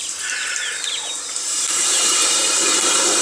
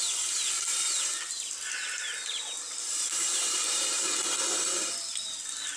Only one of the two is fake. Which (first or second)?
first